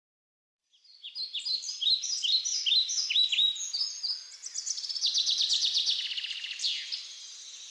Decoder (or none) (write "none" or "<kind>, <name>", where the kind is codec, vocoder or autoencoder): none